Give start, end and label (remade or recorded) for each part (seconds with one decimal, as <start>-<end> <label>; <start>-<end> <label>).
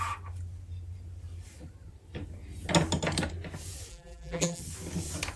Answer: 0.0-3.9 recorded; 3.9-4.6 remade; 4.6-5.4 recorded